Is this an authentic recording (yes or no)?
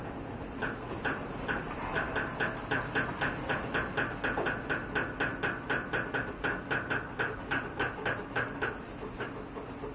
yes